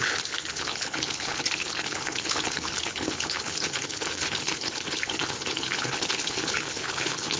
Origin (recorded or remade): remade